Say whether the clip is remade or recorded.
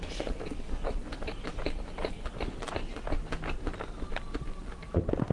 recorded